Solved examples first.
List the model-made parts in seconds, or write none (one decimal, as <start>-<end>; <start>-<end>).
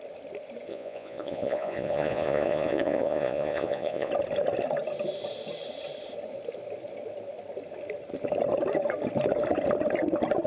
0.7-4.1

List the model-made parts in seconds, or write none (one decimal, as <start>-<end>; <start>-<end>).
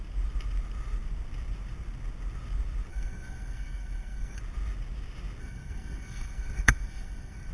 2.9-4.4; 5.4-7.5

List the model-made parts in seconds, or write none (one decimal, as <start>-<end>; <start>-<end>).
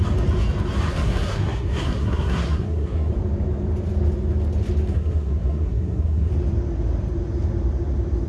0.9-3.1; 4.9-6.3